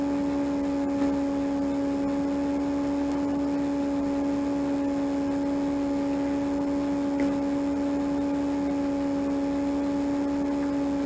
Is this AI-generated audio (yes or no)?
no